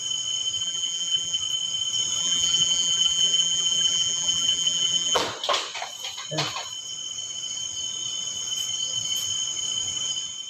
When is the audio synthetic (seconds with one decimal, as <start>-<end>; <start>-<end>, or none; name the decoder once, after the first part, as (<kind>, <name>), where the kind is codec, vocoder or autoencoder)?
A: 0.6-1.4 (vocoder, BigVGAN v2); 2.2-5.2